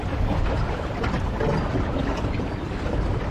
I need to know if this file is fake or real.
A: real